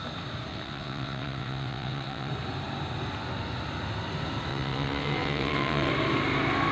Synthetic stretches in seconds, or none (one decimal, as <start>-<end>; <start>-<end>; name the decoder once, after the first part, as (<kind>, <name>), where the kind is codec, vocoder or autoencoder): 0.5-2.3 (vocoder, WaveNeXt); 4.5-5.9